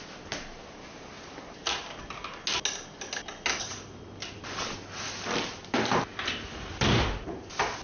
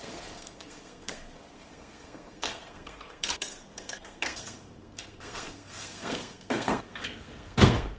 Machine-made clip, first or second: second